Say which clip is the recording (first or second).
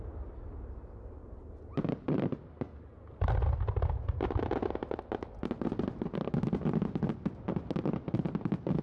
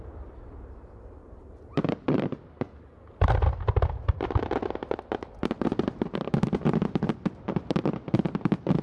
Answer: first